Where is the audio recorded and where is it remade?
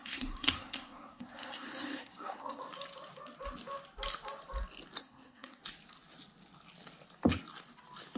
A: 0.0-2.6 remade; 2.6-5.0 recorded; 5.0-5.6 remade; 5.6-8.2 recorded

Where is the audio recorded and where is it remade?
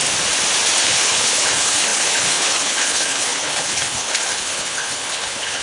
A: 0.0-0.8 recorded; 0.8-5.6 remade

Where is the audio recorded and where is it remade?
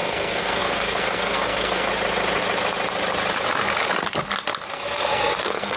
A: 0.0-1.9 remade; 1.9-4.7 recorded; 4.7-5.8 remade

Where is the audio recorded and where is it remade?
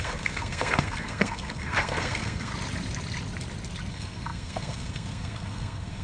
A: 0.0-2.5 remade; 2.5-3.9 recorded; 3.9-6.0 remade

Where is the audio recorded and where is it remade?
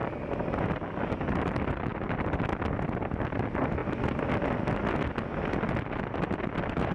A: 0.0-6.9 recorded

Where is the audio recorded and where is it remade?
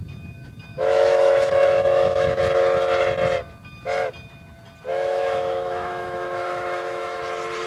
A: 0.0-0.7 recorded; 0.7-2.4 remade; 2.4-4.9 recorded; 4.9-7.2 remade; 7.2-7.7 recorded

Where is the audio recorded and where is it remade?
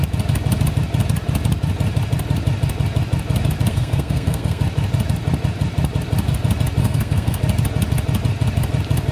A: 0.0-3.7 recorded; 3.7-4.6 remade; 4.6-6.8 recorded; 6.8-7.4 remade; 7.4-9.1 recorded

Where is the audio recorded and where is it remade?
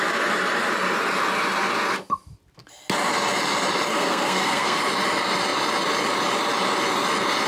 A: 0.0-3.9 recorded; 3.9-4.8 remade; 4.8-7.5 recorded